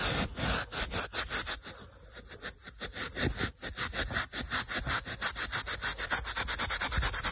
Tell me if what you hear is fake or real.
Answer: real